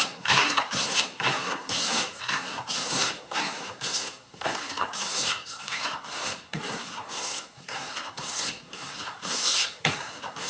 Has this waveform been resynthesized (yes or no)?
yes